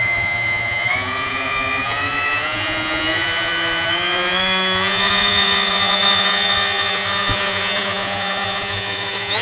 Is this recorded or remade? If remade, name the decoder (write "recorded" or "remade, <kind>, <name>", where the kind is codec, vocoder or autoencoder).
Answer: remade, vocoder, Vocos